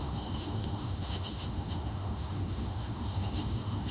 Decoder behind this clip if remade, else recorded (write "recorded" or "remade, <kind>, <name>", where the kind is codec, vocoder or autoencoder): remade, autoencoder, DAC-VAE